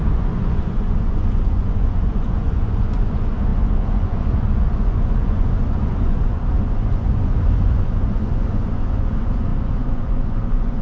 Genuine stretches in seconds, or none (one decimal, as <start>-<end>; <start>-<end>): none